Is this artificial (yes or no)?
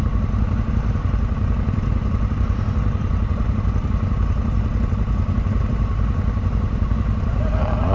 no